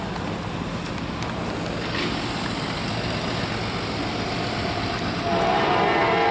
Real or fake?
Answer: real